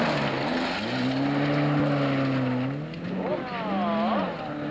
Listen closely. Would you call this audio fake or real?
real